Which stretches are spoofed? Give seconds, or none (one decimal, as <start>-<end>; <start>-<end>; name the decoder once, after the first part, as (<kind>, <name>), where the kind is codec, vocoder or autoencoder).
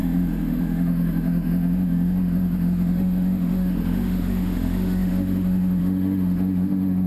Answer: 0.0-7.1 (autoencoder, DAC-VAE)